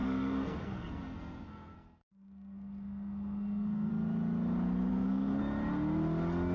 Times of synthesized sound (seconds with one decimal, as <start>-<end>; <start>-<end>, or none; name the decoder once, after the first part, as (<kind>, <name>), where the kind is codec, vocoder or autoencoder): 0.0-3.9 (codec, SNAC); 4.9-5.4